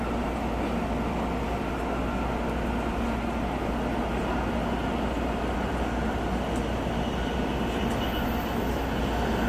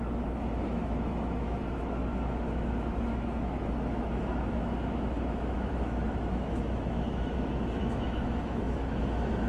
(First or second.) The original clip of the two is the first